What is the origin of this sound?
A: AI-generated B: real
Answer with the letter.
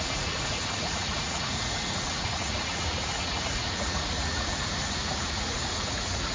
A